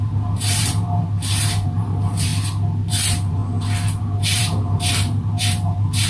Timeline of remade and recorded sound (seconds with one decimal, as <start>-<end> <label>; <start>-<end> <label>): 0.0-2.3 remade; 2.3-2.9 recorded; 2.9-3.4 remade; 3.4-4.0 recorded; 4.0-6.1 remade